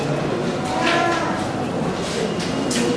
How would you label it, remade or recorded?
recorded